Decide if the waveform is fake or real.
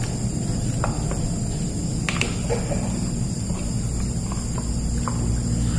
real